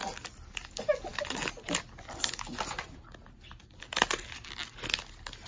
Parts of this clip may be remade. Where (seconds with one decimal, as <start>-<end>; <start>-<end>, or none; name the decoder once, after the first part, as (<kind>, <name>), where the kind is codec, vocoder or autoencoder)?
none